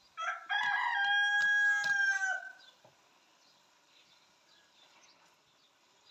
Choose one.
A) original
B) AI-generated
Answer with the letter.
A